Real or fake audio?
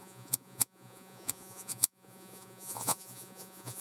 fake